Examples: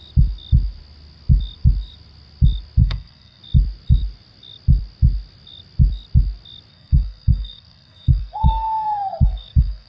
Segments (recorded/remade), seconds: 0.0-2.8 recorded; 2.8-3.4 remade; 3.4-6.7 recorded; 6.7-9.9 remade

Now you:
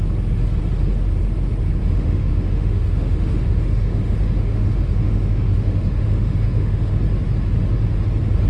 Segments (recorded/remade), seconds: 0.0-1.8 recorded; 1.8-6.9 remade; 6.9-8.5 recorded

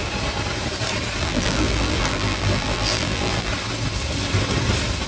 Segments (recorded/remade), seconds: 0.0-1.2 recorded; 1.2-3.5 remade; 3.5-5.1 recorded

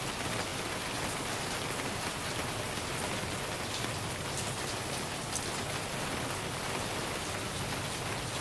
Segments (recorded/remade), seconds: 0.0-8.4 recorded

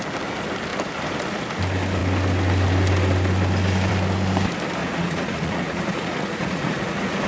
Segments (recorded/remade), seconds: 0.0-4.8 recorded; 4.8-7.3 remade

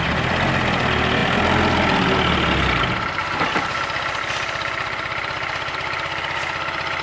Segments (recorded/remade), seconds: 0.0-7.0 recorded

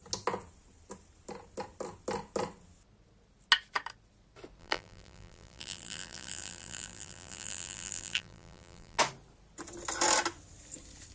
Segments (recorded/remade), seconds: 0.0-4.6 recorded; 4.6-9.0 remade; 9.0-11.1 recorded